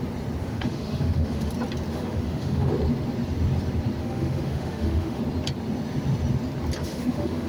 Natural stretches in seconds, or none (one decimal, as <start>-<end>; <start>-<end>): 0.0-0.4; 1.5-1.9; 2.7-4.0; 5.2-6.8